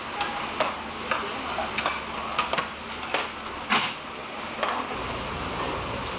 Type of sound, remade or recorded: recorded